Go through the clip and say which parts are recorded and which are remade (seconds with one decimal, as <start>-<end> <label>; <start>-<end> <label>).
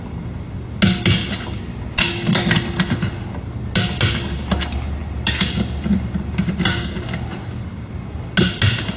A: 0.0-9.0 recorded